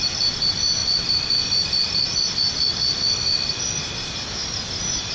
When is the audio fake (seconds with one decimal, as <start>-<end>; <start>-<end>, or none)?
none